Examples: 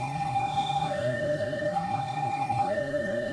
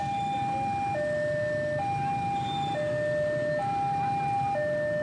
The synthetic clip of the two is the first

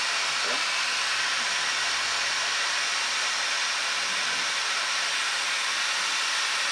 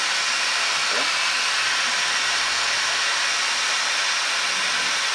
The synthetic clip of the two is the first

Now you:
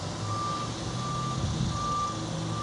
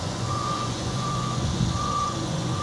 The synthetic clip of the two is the second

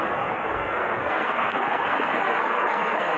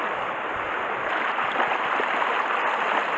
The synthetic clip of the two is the first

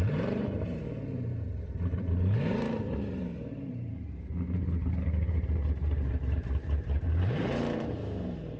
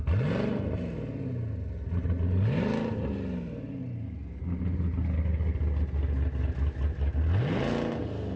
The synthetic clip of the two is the first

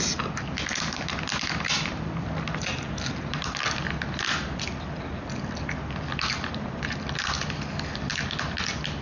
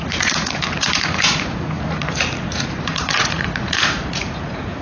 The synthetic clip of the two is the second